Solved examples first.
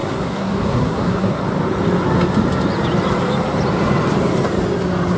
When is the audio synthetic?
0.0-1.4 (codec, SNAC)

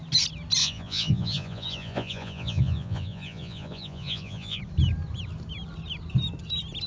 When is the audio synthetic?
0.6-4.6 (vocoder, Vocos)